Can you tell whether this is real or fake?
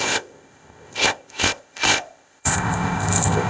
fake